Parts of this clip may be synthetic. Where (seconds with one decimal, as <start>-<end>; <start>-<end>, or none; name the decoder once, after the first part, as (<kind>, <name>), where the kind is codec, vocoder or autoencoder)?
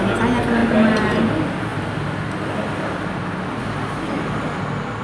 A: 0.6-1.2 (vocoder, BigVGAN v2)